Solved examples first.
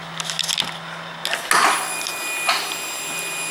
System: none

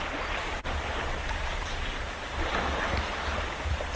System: none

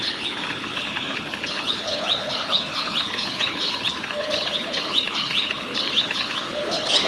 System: codec, HILCodec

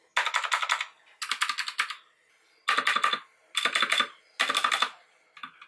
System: none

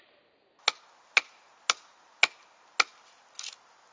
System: none